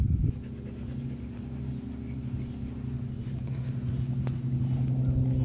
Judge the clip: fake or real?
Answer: real